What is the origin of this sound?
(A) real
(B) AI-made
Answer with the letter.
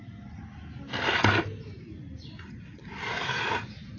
A